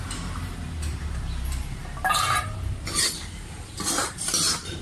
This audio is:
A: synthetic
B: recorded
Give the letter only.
A